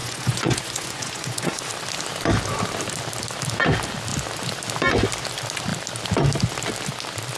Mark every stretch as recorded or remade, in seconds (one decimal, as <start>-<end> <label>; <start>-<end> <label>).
0.0-1.6 remade; 1.6-7.4 recorded